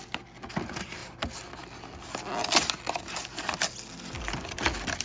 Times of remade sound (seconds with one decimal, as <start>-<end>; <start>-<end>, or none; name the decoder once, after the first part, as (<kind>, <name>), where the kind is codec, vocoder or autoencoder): none